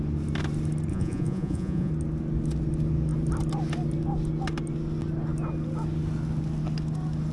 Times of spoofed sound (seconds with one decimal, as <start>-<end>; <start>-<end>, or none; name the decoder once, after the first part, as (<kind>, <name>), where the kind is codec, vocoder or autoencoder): 0.9-1.9 (vocoder, Vocos)